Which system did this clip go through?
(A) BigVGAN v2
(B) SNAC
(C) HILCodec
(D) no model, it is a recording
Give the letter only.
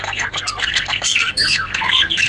B